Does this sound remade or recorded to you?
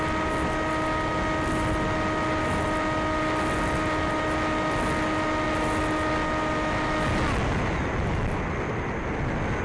recorded